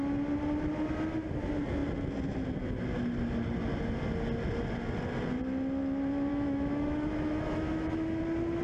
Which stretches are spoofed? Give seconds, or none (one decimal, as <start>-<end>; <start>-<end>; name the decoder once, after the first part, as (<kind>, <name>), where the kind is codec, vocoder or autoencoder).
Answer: 6.3-8.2 (autoencoder, DAC-VAE)